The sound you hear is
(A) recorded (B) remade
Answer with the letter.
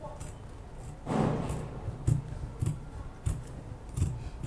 B